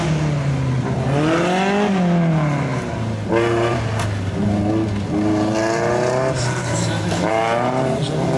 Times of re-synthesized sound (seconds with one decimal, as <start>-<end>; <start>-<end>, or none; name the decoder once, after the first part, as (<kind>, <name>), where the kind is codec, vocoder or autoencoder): 6.6-7.3 (autoencoder, DAC-VAE)